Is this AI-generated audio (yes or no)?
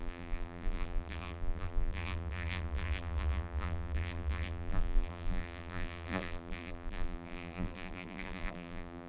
yes